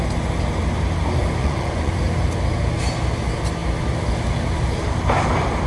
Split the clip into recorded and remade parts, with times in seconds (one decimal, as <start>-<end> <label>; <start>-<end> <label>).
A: 0.0-1.4 recorded; 1.4-1.9 remade; 1.9-5.7 recorded